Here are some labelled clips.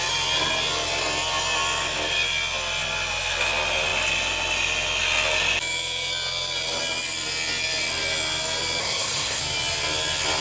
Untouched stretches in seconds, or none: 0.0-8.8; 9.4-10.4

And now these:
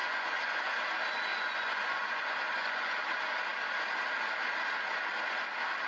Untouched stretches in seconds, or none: 0.7-1.3; 2.9-5.9

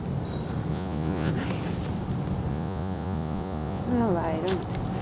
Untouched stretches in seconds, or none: 0.0-0.7; 1.3-2.5; 3.8-5.0

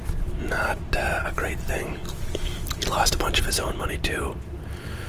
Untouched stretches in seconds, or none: 0.0-5.1

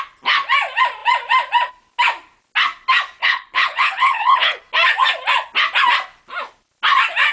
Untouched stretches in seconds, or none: 0.0-3.2; 4.6-7.3

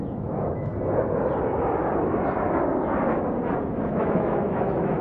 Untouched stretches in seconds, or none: 0.7-3.7

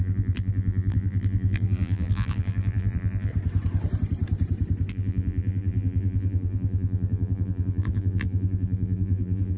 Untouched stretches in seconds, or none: 3.3-4.9

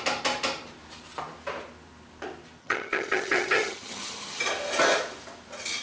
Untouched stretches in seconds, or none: 0.0-2.6; 4.4-5.8